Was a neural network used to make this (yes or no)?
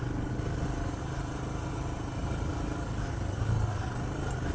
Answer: no